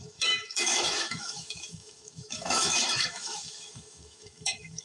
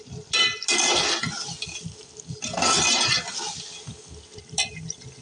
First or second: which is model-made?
first